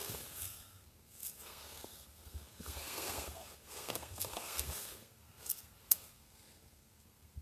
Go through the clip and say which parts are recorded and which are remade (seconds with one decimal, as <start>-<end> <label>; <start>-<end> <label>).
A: 0.0-7.4 remade